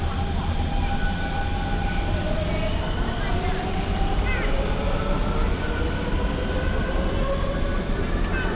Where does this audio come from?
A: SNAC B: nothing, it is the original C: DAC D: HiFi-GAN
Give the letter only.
B